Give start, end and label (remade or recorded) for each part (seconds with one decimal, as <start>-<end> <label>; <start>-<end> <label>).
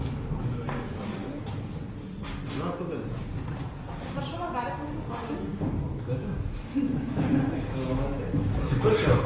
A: 0.0-5.5 recorded; 5.5-8.6 remade; 8.6-9.3 recorded